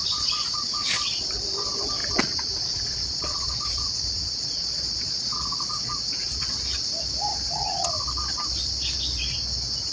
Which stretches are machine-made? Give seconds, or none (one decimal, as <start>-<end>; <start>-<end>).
0.0-1.1; 2.0-6.5; 7.3-7.9